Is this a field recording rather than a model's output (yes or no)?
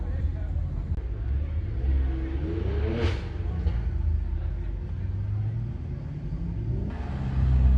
yes